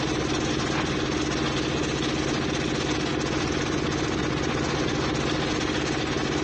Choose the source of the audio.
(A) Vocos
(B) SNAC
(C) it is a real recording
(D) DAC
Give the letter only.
C